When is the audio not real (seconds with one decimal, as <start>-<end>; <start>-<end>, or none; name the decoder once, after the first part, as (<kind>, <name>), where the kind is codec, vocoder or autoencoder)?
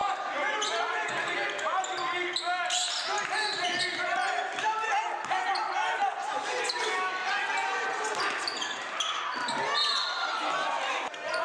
0.0-1.3 (vocoder, BigVGAN v2)